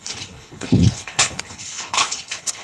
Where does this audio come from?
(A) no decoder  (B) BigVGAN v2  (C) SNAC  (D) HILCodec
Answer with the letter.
D